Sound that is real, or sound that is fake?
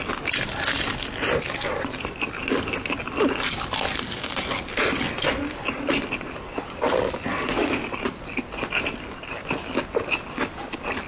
real